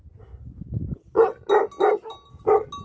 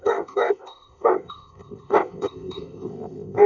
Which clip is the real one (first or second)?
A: first